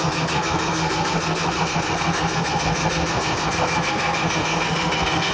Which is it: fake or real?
fake